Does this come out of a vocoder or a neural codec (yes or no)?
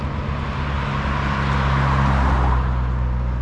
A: no